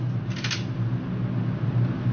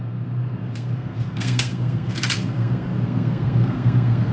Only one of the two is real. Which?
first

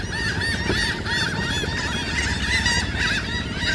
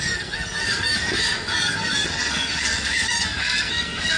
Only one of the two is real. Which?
first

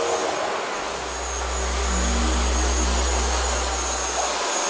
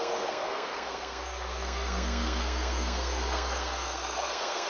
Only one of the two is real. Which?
first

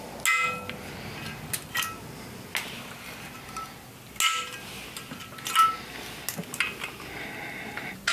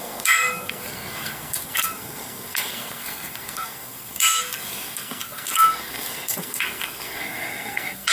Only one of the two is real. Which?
first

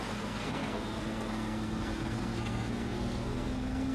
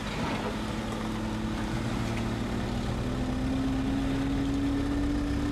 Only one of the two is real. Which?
second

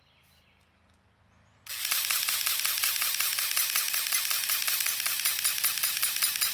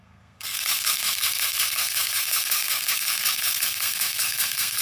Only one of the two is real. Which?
first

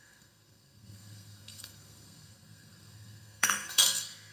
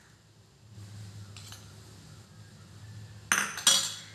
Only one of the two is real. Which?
second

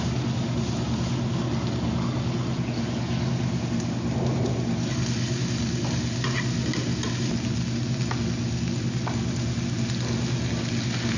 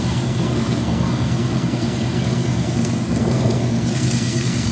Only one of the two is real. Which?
first